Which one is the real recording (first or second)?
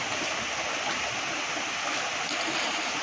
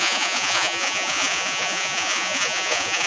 first